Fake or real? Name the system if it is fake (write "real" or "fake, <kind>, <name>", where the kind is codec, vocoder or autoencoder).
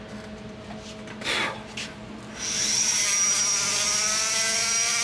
real